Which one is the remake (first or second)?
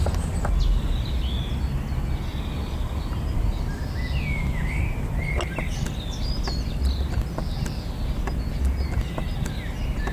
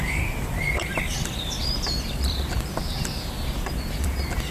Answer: second